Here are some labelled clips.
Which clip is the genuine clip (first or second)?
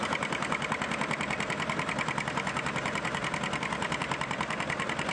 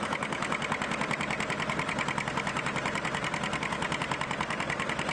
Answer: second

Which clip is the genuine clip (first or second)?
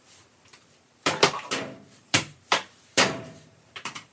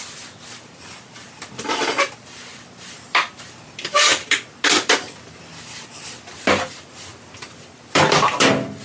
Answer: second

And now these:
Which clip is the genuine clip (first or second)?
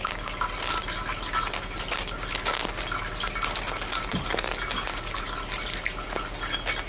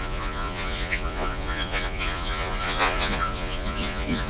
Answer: first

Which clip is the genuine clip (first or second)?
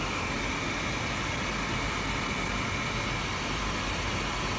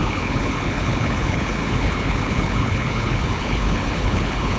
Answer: first